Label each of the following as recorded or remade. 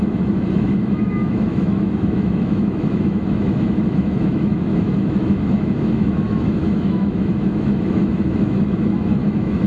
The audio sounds remade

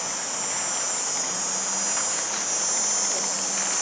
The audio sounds recorded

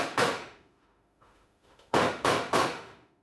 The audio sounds remade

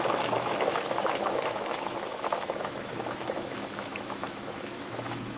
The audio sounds remade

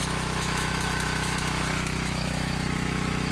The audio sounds remade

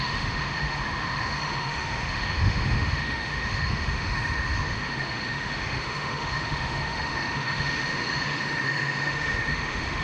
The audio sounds remade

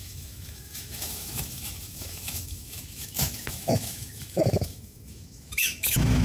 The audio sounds remade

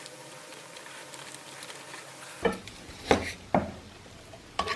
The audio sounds recorded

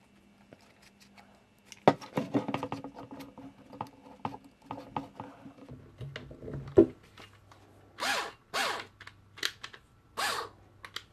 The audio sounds recorded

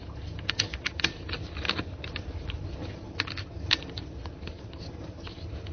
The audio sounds recorded